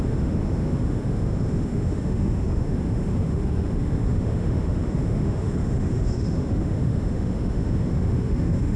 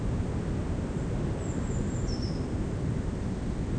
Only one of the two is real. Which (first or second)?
second